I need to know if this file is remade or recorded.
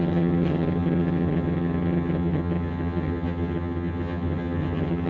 remade